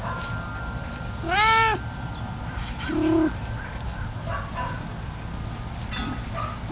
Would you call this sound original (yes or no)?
yes